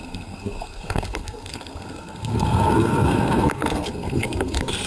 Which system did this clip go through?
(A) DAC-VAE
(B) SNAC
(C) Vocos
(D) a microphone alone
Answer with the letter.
B